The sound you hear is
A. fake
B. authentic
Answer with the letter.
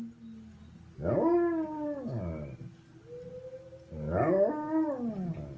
B